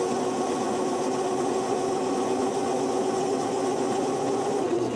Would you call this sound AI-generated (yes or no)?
yes